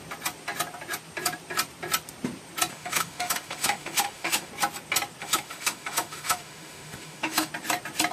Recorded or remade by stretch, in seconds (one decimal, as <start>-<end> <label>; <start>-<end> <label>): 0.0-2.7 recorded; 2.7-4.5 remade; 4.5-5.2 recorded; 5.2-7.5 remade; 7.5-8.1 recorded